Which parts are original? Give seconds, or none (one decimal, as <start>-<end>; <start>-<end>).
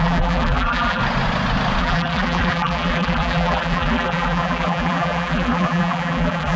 1.0-1.8